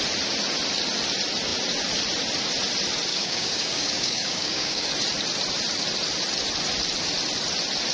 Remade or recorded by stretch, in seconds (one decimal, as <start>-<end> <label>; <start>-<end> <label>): 0.0-3.1 recorded; 3.1-4.9 remade; 4.9-7.9 recorded